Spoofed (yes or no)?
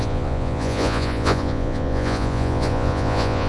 yes